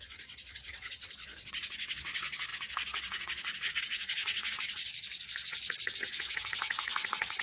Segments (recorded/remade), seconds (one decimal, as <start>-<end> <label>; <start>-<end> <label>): 0.0-7.4 remade